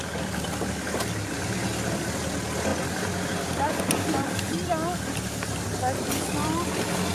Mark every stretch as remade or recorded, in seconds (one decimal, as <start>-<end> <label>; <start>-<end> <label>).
0.0-7.1 recorded